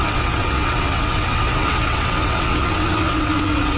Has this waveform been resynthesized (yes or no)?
yes